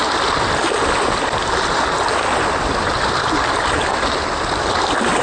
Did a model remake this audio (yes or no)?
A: no